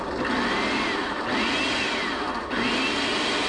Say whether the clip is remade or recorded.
recorded